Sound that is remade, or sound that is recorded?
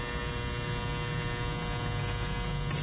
recorded